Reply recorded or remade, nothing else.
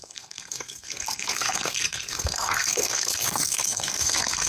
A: remade